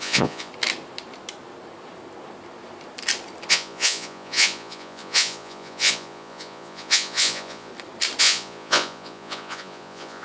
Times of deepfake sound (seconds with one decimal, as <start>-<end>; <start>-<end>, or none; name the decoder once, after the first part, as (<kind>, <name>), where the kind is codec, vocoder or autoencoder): 0.0-0.5 (vocoder, Vocos); 3.5-7.7; 8.2-10.2